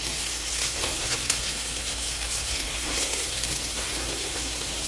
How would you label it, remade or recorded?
remade